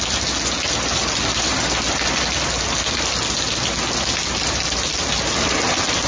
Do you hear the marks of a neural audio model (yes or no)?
no